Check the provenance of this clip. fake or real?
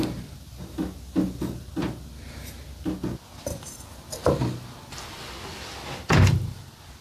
real